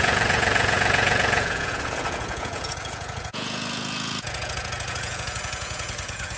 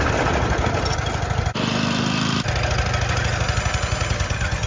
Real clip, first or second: second